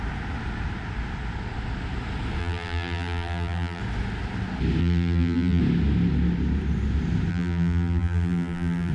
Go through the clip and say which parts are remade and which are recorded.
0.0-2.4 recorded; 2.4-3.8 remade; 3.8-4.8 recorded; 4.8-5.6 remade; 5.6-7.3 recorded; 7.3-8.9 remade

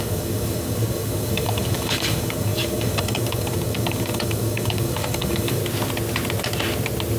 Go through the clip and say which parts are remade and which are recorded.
0.0-5.6 remade; 5.6-7.2 recorded

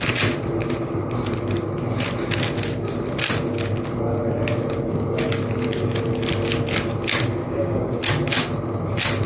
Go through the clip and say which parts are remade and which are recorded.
0.0-7.4 recorded; 7.4-8.0 remade; 8.0-9.3 recorded

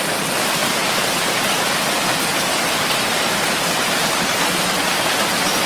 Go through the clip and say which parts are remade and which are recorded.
0.0-0.6 recorded; 0.6-1.4 remade; 1.4-3.1 recorded; 3.1-5.3 remade; 5.3-5.7 recorded

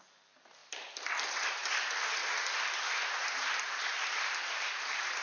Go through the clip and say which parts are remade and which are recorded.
0.0-2.2 recorded; 2.2-3.9 remade; 3.9-5.2 recorded

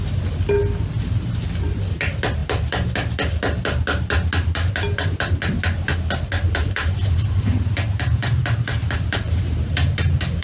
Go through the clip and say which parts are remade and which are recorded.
0.0-6.6 recorded; 6.6-9.9 remade; 9.9-10.4 recorded